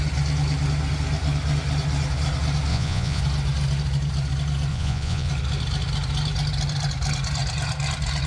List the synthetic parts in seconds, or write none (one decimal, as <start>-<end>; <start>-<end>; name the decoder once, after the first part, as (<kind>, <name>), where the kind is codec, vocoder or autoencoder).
2.7-3.2 (vocoder, Vocos); 4.7-5.3